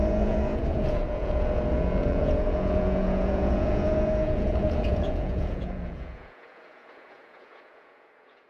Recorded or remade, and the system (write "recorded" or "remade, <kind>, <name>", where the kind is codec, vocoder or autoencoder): remade, vocoder, Vocos